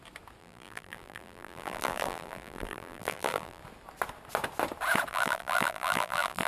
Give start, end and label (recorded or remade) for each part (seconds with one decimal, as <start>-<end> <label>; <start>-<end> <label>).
0.0-0.4 recorded; 0.4-3.6 remade; 3.6-5.1 recorded; 5.1-6.5 remade